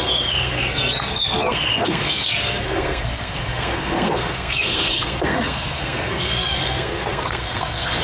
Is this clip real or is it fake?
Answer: fake